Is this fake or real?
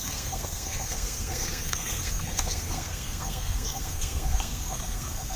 fake